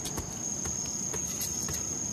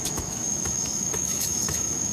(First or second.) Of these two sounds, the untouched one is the first